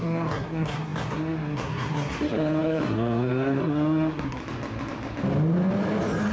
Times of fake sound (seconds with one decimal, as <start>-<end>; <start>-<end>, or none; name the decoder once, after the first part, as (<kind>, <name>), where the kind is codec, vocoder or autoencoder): 0.0-4.4 (codec, SNAC)